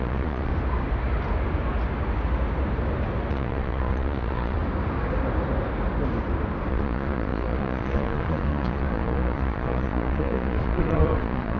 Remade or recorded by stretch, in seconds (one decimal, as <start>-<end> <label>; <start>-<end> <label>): 0.0-0.5 remade; 0.5-3.3 recorded; 3.3-4.6 remade; 4.6-6.7 recorded; 6.7-11.6 remade